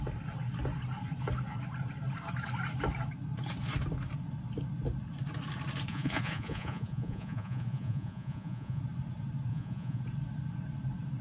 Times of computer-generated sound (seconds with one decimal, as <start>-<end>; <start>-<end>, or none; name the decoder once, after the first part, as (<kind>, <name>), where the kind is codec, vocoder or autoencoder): 5.9-8.8 (vocoder, Vocos); 9.5-10.0